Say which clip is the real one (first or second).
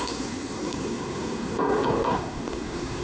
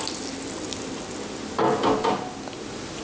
second